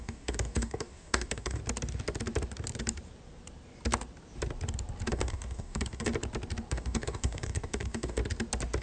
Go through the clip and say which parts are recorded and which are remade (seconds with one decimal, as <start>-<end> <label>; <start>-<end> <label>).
0.0-1.6 remade; 1.6-5.1 recorded; 5.1-6.1 remade; 6.1-6.7 recorded; 6.7-8.2 remade; 8.2-8.8 recorded